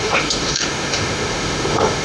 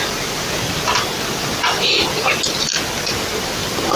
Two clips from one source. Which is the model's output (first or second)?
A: first